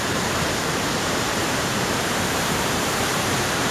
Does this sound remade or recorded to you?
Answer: remade